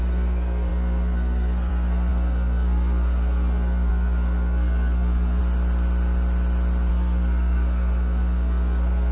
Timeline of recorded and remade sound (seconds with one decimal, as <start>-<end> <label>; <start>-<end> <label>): 0.0-5.4 remade; 5.4-6.9 recorded; 6.9-9.1 remade

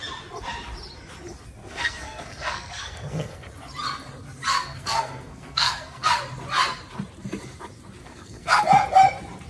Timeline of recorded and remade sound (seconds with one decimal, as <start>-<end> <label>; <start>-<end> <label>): 0.0-1.6 recorded; 1.6-3.5 remade; 3.5-4.5 recorded; 4.5-6.2 remade; 6.2-8.0 recorded; 8.0-8.6 remade; 8.6-9.5 recorded